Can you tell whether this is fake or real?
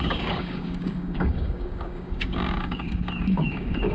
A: fake